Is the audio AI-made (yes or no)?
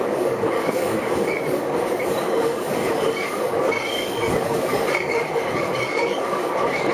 yes